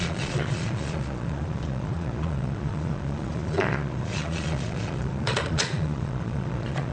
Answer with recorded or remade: remade